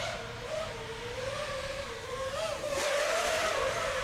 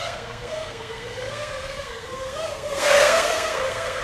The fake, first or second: second